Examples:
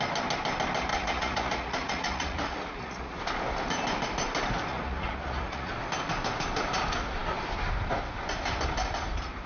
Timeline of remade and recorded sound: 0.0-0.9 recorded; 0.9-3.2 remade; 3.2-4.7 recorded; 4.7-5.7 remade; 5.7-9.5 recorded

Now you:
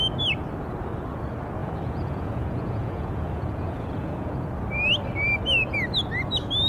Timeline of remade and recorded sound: 0.0-1.6 recorded; 1.6-4.3 remade; 4.3-6.7 recorded

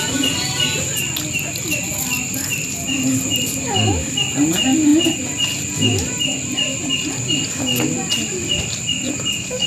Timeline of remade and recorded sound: 0.0-9.7 recorded